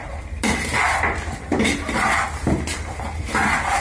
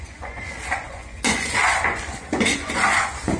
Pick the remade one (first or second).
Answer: second